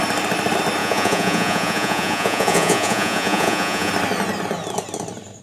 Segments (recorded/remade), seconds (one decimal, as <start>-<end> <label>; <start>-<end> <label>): 0.0-0.8 recorded; 0.8-3.9 remade; 3.9-5.4 recorded